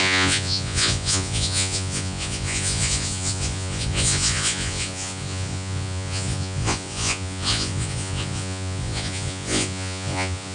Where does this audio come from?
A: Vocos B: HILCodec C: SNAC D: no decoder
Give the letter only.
A